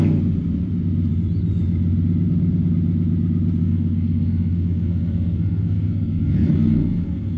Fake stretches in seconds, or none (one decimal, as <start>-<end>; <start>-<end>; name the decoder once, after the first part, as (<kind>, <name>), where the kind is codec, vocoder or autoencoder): 3.6-7.4 (codec, SNAC)